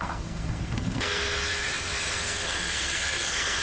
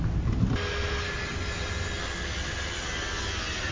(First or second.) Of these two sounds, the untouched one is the second